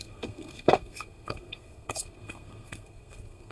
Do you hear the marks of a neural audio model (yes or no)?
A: yes